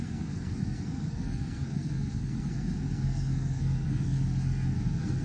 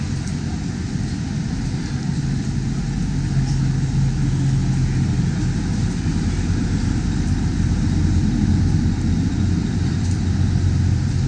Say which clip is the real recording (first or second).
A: second